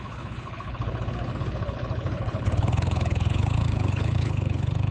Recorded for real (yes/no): no